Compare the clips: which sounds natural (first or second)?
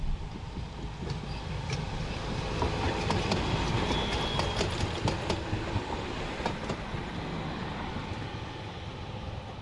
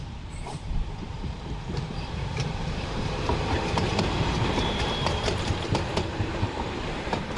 first